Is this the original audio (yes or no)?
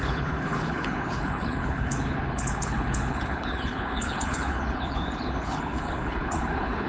no